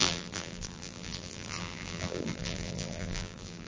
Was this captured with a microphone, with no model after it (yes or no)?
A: no